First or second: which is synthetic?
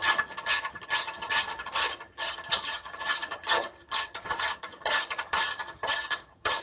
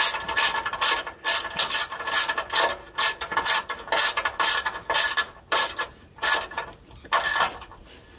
first